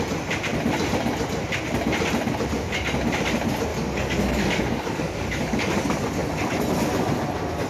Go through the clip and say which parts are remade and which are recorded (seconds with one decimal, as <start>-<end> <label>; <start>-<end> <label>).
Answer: 0.0-3.7 recorded; 3.7-5.7 remade; 5.7-7.7 recorded